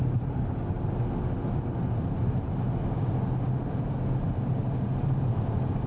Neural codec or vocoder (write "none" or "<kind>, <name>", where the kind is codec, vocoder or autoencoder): none